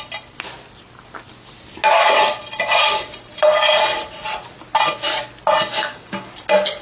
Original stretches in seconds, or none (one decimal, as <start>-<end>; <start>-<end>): 0.0-5.7; 6.3-6.8